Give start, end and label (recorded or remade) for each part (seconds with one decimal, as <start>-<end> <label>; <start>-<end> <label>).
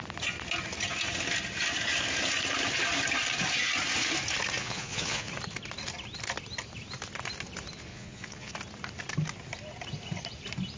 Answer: 0.0-4.6 recorded; 4.6-5.3 remade; 5.3-7.9 recorded; 7.9-8.5 remade; 8.5-10.8 recorded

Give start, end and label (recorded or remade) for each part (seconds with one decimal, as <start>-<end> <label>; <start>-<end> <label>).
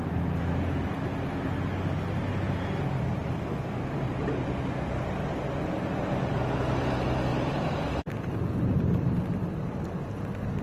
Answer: 0.0-7.3 recorded; 7.3-8.1 remade; 8.1-10.6 recorded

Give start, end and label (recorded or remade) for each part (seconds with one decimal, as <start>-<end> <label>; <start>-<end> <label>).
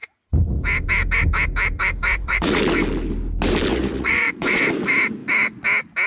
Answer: 0.0-0.6 remade; 0.6-2.1 recorded; 2.1-2.6 remade; 2.6-3.7 recorded; 3.7-4.6 remade; 4.6-6.1 recorded